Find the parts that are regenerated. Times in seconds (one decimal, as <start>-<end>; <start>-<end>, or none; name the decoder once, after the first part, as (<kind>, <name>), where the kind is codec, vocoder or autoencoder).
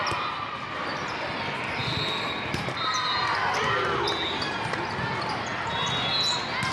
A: none